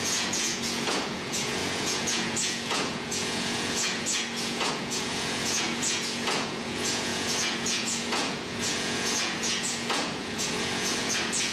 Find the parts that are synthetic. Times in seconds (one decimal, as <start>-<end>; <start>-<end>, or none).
0.0-11.5